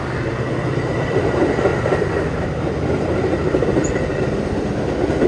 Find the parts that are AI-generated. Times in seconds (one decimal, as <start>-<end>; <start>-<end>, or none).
0.0-5.3